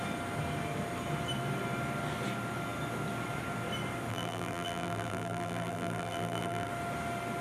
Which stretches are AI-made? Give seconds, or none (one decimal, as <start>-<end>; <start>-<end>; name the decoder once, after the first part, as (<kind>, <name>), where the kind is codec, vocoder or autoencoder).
4.1-6.7 (vocoder, BigVGAN v2)